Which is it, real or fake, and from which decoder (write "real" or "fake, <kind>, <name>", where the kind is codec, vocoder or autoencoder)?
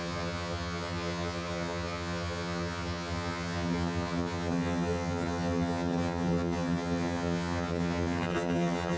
fake, vocoder, HiFi-GAN